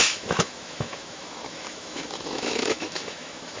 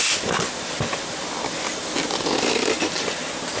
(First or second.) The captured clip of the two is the second